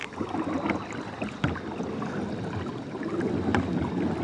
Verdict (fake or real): real